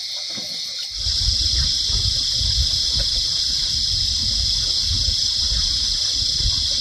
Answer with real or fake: real